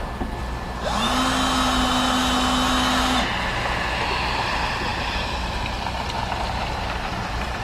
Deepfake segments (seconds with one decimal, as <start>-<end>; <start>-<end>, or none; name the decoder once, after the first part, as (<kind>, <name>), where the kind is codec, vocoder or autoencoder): 4.9-7.6 (vocoder, BigVGAN v2)